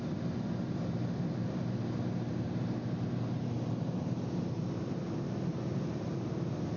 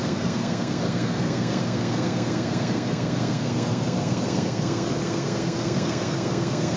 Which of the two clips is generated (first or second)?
second